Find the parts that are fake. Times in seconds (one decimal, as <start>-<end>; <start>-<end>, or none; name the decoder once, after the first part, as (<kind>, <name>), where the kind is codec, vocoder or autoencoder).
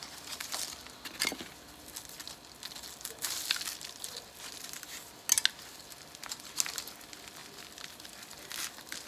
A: none